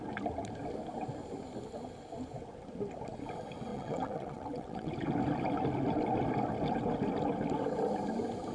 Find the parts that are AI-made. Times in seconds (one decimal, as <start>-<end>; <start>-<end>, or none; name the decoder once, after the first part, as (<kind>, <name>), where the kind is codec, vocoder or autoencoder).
3.7-4.9 (vocoder, WaveNeXt)